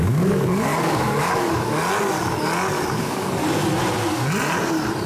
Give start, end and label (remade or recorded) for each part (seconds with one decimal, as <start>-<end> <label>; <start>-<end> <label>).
0.0-1.8 remade; 1.8-3.0 recorded; 3.0-3.4 remade; 3.4-5.1 recorded

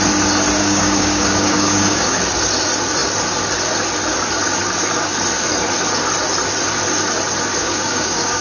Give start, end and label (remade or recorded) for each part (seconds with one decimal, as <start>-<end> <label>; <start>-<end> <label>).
0.0-0.6 recorded; 0.6-2.2 remade; 2.2-7.6 recorded; 7.6-8.4 remade

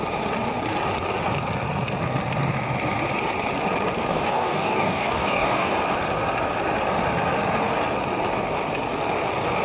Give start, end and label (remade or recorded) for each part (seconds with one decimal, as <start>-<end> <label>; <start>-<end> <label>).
0.0-4.1 recorded; 4.1-5.7 remade; 5.7-9.6 recorded